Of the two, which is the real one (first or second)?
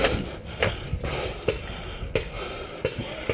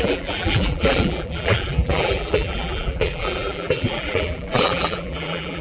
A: first